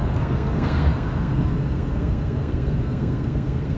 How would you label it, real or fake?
fake